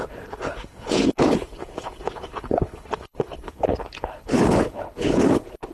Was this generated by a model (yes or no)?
yes